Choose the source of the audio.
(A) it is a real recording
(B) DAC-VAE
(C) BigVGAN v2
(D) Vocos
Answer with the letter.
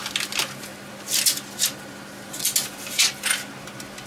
A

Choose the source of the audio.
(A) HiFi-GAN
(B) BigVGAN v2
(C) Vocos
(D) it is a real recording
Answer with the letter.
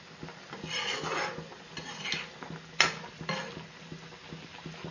D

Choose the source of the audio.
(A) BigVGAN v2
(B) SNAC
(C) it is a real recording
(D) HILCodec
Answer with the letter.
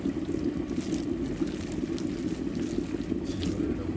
C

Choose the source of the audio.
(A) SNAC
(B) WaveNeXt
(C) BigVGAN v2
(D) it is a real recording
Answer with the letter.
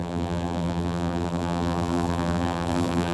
C